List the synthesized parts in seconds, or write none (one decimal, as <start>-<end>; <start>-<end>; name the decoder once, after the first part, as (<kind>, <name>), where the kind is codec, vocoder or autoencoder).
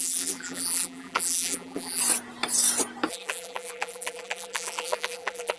0.0-2.0 (vocoder, BigVGAN v2); 3.1-5.6